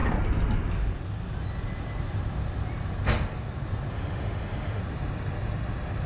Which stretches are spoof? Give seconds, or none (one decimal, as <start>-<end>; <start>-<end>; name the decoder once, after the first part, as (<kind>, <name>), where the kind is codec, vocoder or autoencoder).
3.9-4.8 (autoencoder, DAC-VAE)